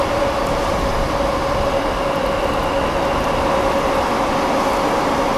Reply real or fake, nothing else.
real